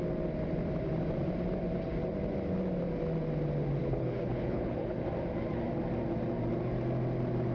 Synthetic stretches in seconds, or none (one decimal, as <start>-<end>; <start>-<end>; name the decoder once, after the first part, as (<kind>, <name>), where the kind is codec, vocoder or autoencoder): 3.8-5.0 (codec, HILCodec)